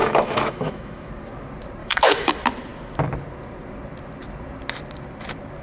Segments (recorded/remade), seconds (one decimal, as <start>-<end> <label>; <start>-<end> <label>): 0.0-1.1 remade; 1.1-1.8 recorded; 1.8-2.3 remade; 2.3-5.6 recorded